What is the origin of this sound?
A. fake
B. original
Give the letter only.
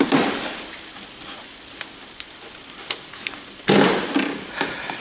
B